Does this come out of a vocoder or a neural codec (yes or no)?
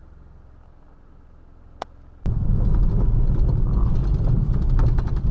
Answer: no